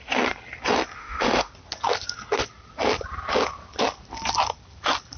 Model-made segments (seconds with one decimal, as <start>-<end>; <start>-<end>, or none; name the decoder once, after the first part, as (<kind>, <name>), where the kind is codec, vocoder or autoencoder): 1.0-1.5 (autoencoder, DAC-VAE)